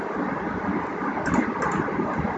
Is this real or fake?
real